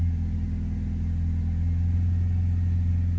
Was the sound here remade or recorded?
recorded